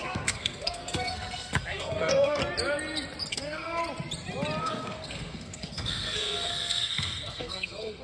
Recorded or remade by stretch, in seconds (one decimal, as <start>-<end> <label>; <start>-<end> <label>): 0.0-2.4 remade; 2.4-3.3 recorded; 3.3-3.8 remade; 3.8-4.6 recorded; 4.6-8.0 remade

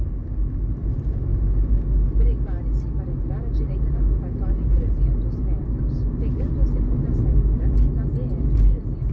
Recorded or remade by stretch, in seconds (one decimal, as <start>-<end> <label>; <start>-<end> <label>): 0.0-9.1 recorded

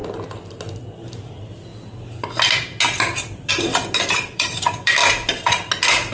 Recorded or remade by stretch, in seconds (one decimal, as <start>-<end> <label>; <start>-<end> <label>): 0.0-0.9 recorded; 0.9-1.7 remade; 1.7-3.5 recorded; 3.5-5.0 remade; 5.0-6.1 recorded